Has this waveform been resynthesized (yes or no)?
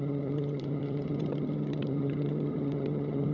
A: yes